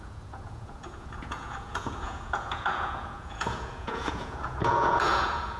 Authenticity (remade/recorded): remade